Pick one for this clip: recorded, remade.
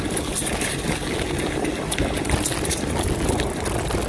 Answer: recorded